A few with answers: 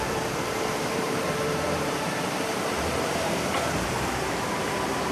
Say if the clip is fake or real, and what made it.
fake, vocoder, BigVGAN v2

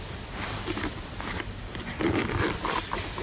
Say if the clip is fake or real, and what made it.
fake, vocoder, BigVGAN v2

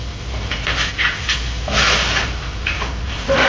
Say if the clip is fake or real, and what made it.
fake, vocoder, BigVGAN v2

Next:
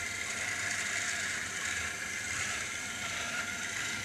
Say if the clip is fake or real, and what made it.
fake, vocoder, BigVGAN v2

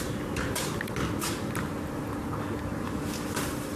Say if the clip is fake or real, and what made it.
real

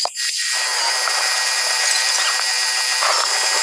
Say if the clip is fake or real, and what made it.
fake, vocoder, BigVGAN v2